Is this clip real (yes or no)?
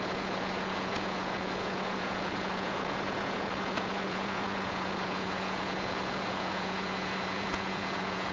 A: no